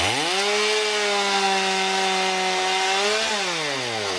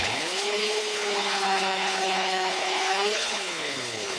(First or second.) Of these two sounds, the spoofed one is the second